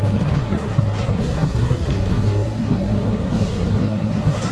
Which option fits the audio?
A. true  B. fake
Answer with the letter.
B